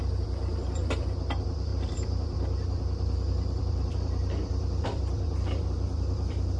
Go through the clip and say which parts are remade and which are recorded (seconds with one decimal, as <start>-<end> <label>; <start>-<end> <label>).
0.0-6.6 remade